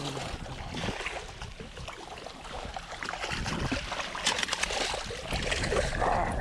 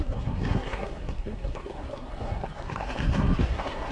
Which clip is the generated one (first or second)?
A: second